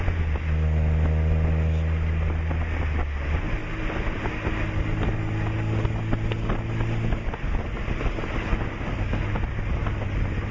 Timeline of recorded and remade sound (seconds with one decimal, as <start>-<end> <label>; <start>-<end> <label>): 0.0-10.5 recorded